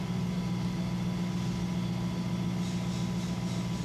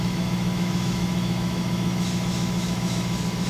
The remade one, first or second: second